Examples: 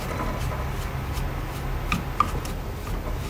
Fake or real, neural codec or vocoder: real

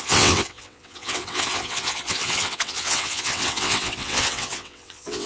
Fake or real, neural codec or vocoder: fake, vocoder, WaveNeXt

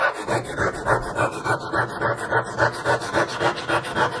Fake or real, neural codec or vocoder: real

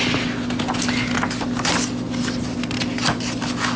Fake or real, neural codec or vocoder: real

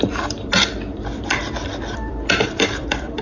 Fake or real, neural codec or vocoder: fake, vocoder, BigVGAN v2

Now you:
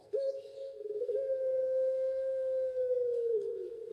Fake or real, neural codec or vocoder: fake, codec, SNAC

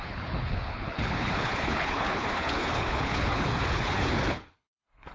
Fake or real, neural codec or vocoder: fake, codec, HILCodec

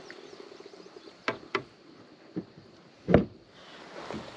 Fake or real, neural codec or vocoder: real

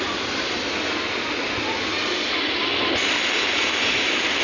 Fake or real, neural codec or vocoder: real